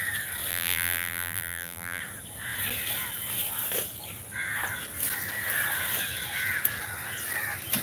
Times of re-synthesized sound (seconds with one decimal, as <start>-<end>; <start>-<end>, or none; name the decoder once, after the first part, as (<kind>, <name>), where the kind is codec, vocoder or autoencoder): 0.5-2.0 (vocoder, BigVGAN v2)